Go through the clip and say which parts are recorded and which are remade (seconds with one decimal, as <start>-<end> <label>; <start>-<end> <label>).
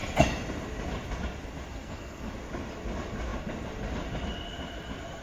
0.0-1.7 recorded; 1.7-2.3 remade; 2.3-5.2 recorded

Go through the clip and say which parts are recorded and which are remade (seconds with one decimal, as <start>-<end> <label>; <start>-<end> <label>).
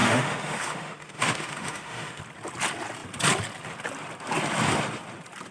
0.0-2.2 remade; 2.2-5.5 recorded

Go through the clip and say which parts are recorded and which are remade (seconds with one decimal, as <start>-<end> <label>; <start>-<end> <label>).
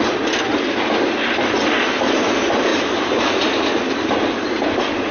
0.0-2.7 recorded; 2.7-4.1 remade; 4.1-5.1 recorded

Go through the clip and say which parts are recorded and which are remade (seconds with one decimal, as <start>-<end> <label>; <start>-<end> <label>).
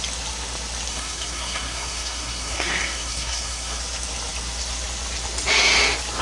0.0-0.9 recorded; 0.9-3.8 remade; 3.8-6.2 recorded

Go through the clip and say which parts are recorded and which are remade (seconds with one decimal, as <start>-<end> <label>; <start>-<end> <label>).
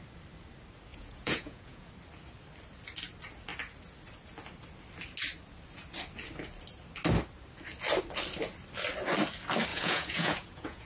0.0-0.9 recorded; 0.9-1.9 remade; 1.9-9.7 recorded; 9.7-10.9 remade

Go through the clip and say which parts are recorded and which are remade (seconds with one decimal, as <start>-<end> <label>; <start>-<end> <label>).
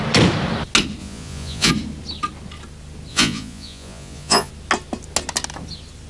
0.0-1.0 recorded; 1.0-1.7 remade; 1.7-3.1 recorded; 3.1-4.5 remade; 4.5-6.1 recorded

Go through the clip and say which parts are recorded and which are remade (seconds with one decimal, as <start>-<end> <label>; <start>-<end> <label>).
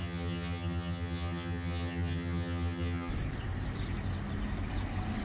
0.0-3.1 remade; 3.1-5.2 recorded